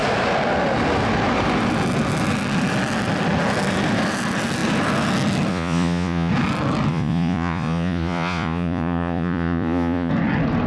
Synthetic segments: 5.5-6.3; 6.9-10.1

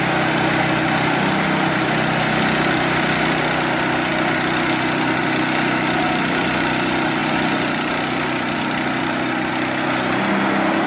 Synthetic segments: none

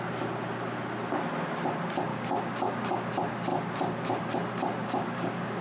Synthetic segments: 2.1-3.1; 4.8-5.6

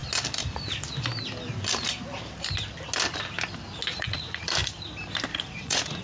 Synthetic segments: 3.9-4.5; 5.3-6.0

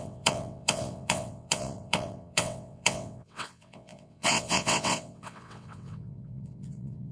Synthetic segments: 0.0-7.1

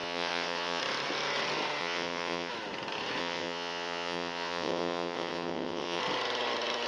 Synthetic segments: 0.0-0.8; 1.8-2.5; 3.2-6.0

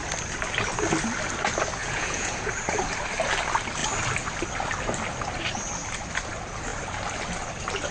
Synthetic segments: 1.8-2.5